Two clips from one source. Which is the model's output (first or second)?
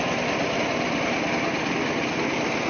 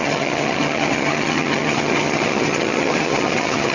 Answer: second